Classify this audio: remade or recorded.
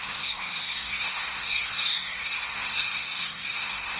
remade